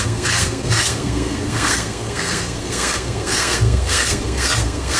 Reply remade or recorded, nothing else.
remade